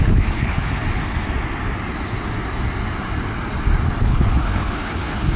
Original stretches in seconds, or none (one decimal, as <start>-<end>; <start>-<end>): 0.8-4.0